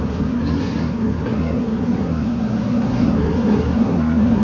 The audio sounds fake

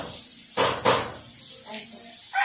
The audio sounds real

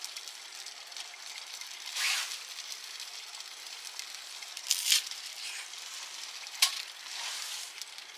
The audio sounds real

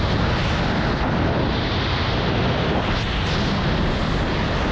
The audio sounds real